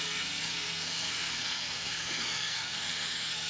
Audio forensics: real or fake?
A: fake